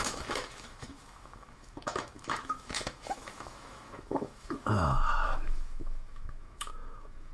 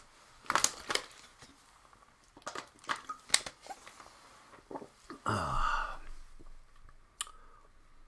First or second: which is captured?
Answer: second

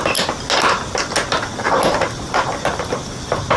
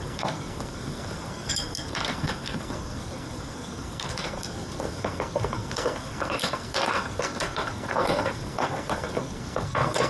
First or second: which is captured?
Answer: first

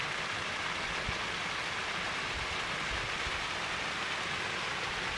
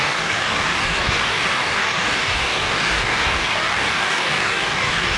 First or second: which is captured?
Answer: first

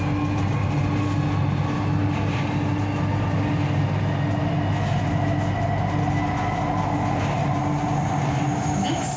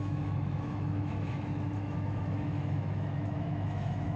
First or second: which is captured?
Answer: first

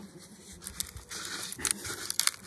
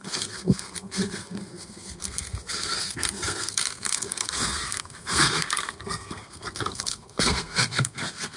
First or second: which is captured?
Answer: first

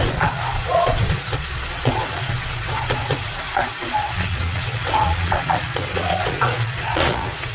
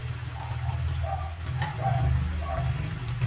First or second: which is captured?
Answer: second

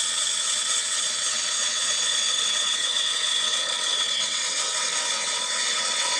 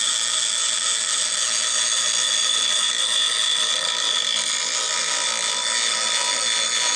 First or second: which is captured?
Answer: second